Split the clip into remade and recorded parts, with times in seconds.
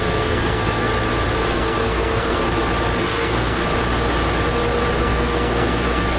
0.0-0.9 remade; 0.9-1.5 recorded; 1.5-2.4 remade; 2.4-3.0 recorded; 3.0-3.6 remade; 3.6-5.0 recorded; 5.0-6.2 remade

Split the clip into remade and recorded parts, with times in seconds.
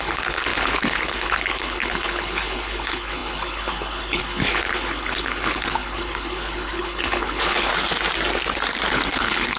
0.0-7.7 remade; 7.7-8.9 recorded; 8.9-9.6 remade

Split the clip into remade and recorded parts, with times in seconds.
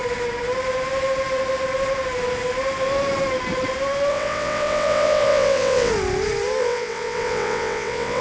0.0-4.1 recorded; 4.1-5.9 remade; 5.9-6.6 recorded; 6.6-8.2 remade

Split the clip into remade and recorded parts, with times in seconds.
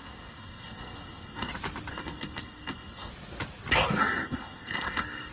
0.0-1.5 remade; 1.5-1.9 recorded; 1.9-3.1 remade; 3.1-4.0 recorded; 4.0-5.3 remade